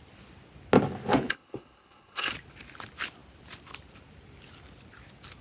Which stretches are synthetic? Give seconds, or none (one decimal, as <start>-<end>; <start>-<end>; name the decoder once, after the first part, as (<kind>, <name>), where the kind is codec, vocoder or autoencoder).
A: 1.3-2.3 (codec, HILCodec)